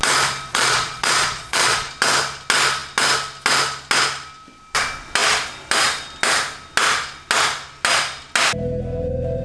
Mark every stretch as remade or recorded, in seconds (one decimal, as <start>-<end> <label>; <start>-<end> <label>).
0.0-0.5 recorded; 0.5-1.9 remade; 1.9-9.4 recorded